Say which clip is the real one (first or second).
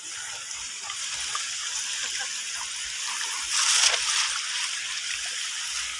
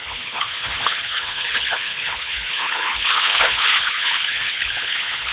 first